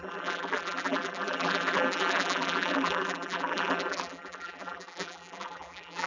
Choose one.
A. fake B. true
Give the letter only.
A